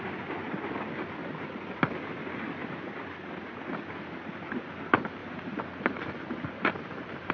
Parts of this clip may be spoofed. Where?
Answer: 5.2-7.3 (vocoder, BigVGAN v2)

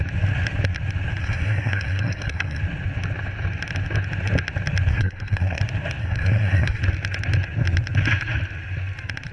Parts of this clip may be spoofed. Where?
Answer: 1.2-2.6 (codec, SNAC); 4.9-5.6; 6.0-6.8

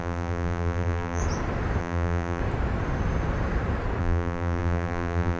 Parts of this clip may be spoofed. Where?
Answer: 0.0-1.2 (vocoder, BigVGAN v2); 1.8-2.4; 4.0-5.4

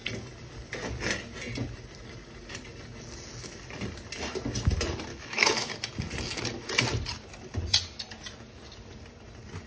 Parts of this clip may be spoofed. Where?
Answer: 5.1-5.7 (autoencoder, DAC-VAE)

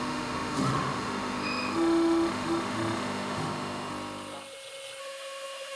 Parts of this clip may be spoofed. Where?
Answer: 0.0-3.9 (autoencoder, DAC-VAE); 5.0-5.8

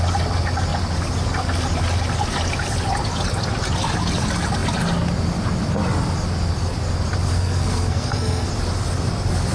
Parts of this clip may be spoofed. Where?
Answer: 7.3-8.5 (codec, SNAC)

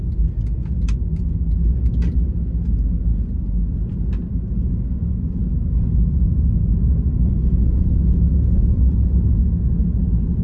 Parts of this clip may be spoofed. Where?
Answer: none